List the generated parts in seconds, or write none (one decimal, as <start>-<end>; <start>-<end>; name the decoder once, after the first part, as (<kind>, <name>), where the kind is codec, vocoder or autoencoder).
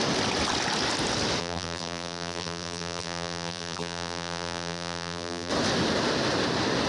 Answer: 1.4-5.5 (vocoder, BigVGAN v2)